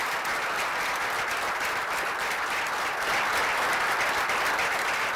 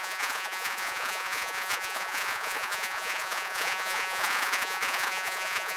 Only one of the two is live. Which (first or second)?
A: first